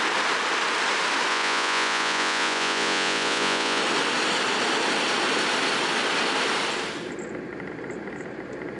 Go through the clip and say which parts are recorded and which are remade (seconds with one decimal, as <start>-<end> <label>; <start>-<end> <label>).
0.0-1.3 recorded; 1.3-3.8 remade; 3.8-8.8 recorded